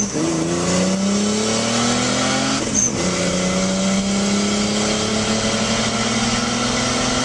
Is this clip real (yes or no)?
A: yes